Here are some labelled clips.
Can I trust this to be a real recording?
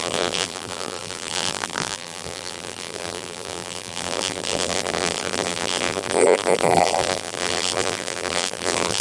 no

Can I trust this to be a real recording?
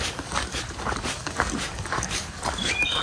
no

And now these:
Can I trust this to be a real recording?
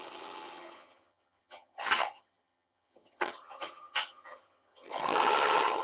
no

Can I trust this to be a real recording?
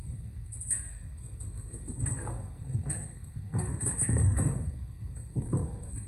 no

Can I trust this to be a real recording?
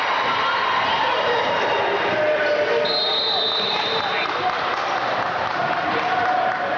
yes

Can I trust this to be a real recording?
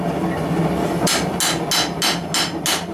yes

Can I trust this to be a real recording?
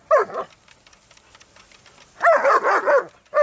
yes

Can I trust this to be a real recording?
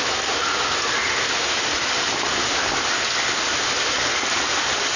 yes